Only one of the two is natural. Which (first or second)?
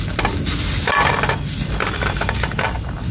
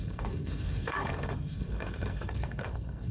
first